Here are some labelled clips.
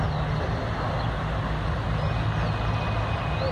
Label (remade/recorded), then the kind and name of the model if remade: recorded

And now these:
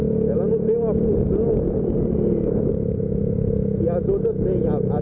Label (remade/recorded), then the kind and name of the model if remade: recorded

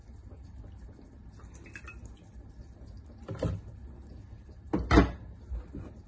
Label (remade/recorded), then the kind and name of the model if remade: recorded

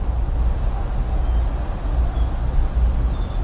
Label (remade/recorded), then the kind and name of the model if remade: recorded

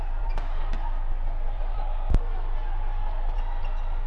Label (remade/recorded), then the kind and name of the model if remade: recorded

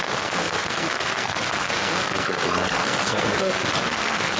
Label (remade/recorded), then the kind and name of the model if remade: remade, codec, SNAC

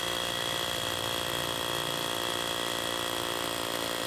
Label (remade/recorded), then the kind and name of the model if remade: recorded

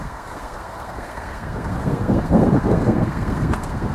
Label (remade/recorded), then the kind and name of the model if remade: remade, codec, SNAC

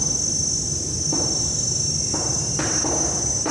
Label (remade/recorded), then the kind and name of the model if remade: recorded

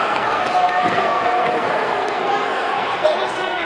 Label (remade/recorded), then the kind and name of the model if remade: remade, codec, SNAC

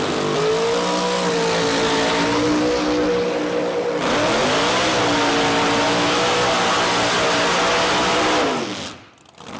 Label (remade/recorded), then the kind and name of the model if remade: recorded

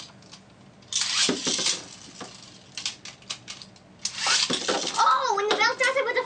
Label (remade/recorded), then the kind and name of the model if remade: recorded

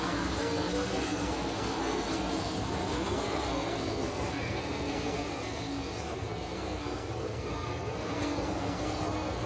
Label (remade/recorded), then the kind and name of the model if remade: remade, codec, SNAC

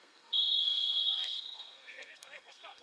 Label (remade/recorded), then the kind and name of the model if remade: remade, codec, SNAC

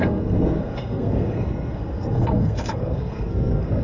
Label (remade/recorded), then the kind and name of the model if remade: remade, codec, SNAC